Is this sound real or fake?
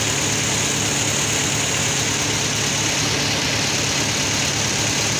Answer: real